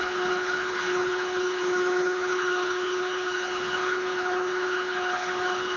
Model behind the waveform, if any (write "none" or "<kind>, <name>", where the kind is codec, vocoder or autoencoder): codec, HILCodec